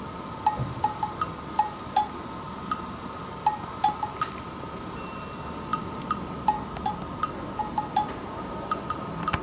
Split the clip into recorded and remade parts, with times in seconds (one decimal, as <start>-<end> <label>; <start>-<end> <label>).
0.0-9.4 recorded